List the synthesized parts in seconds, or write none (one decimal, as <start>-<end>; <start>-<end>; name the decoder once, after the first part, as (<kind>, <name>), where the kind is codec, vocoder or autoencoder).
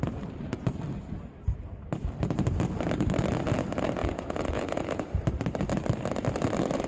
4.0-5.0 (vocoder, Vocos)